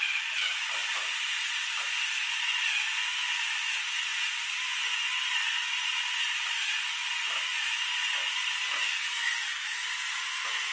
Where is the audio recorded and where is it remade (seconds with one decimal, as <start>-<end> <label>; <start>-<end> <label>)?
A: 0.0-10.7 recorded